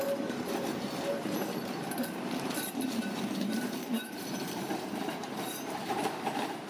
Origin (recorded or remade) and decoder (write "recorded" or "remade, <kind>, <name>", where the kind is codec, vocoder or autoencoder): remade, vocoder, BigVGAN v2